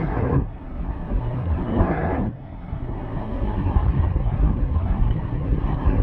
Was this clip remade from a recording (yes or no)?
yes